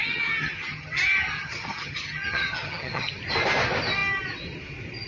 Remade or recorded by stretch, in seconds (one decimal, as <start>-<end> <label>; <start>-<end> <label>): 0.0-3.1 remade; 3.1-5.1 recorded